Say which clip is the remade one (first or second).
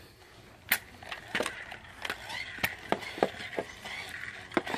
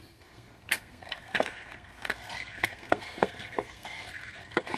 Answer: second